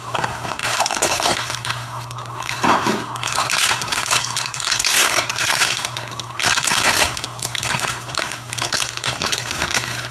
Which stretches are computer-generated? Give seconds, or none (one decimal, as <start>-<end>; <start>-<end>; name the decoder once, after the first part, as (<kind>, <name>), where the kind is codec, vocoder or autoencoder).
0.0-10.1 (codec, SNAC)